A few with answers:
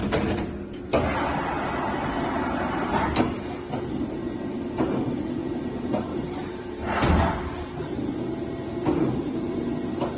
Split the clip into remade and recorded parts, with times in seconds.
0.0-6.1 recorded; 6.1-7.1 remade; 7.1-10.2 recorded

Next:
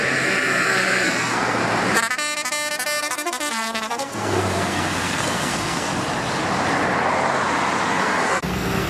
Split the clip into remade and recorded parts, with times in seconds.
0.0-1.6 remade; 1.6-3.0 recorded; 3.0-5.9 remade; 5.9-7.9 recorded; 7.9-8.9 remade

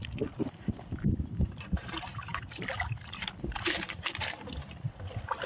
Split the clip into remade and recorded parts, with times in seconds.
0.0-5.5 recorded

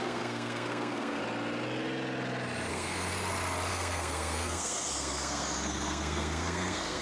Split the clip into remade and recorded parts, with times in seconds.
0.0-1.2 remade; 1.2-2.7 recorded; 2.7-3.1 remade; 3.1-3.7 recorded; 3.7-7.0 remade

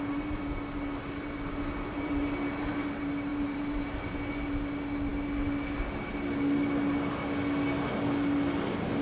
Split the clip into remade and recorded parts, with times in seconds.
0.0-3.3 recorded; 3.3-3.8 remade; 3.8-9.0 recorded

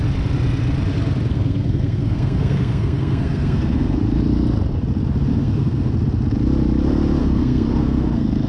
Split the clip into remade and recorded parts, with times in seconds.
0.0-1.3 recorded; 1.3-4.0 remade; 4.0-5.3 recorded; 5.3-5.9 remade; 5.9-7.2 recorded; 7.2-8.5 remade